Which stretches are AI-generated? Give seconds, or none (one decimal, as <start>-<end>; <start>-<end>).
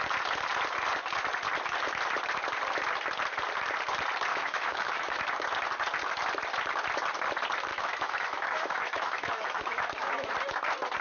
4.3-5.2; 7.7-10.3